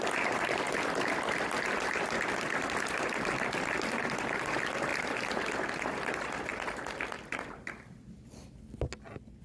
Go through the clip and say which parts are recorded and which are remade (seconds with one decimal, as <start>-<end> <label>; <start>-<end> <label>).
0.0-9.4 recorded